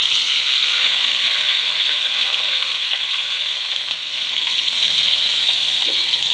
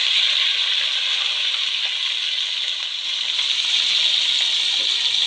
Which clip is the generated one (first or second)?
first